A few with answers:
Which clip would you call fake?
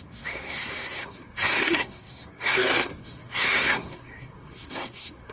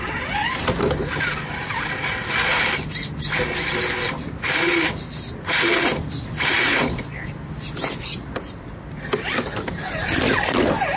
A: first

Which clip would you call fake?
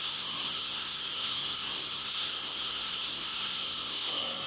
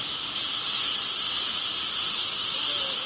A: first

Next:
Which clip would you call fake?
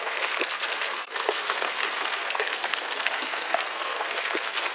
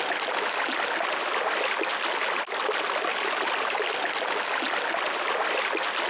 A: first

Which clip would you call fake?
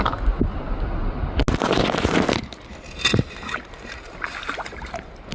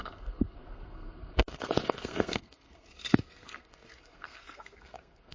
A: second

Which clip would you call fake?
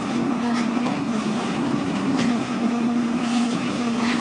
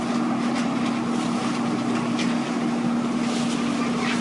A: first